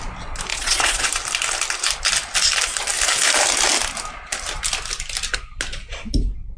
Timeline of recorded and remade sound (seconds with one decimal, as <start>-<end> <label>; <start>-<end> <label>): 0.0-0.5 recorded; 0.5-1.1 remade; 1.1-6.6 recorded